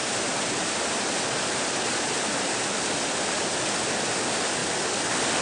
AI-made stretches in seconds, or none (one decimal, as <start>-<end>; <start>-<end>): 4.6-5.4